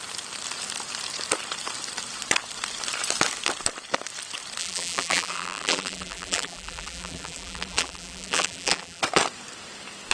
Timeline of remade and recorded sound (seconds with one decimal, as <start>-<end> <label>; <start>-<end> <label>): 0.0-4.6 recorded; 4.6-9.0 remade; 9.0-10.1 recorded